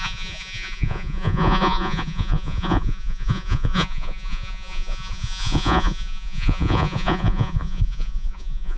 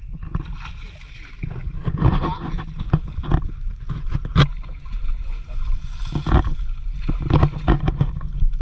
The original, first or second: second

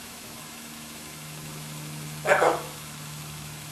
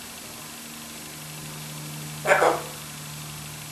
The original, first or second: second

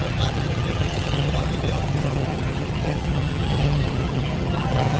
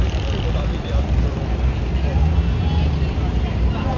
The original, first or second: second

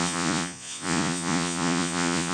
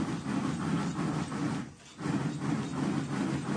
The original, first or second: second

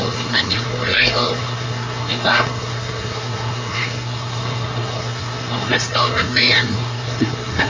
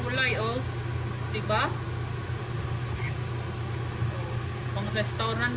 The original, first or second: second